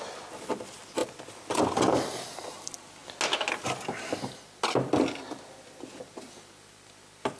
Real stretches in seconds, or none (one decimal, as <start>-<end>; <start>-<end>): 0.0-7.4